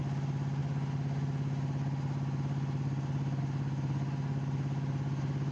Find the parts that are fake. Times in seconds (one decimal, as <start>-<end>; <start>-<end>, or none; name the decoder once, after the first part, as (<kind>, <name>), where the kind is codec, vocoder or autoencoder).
none